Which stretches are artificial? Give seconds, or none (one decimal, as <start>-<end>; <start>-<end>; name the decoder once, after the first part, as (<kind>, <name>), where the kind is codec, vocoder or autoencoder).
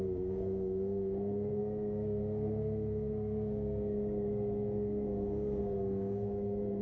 0.0-6.8 (codec, SNAC)